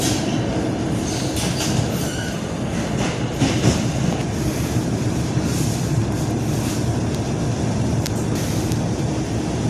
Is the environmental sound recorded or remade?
recorded